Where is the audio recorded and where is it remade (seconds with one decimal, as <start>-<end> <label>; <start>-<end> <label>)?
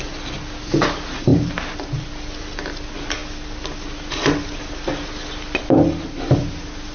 0.0-1.3 recorded; 1.3-2.1 remade; 2.1-6.9 recorded